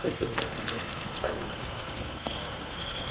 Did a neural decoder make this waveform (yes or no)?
yes